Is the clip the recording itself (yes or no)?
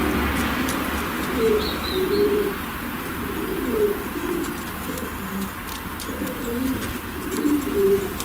yes